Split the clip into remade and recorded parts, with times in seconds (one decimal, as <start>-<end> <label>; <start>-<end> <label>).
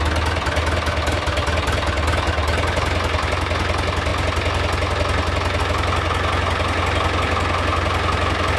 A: 0.0-8.6 recorded